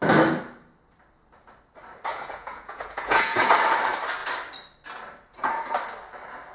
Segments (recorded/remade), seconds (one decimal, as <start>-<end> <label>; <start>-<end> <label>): 0.0-2.1 recorded; 2.1-3.5 remade; 3.5-6.5 recorded